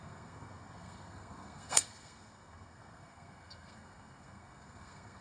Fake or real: fake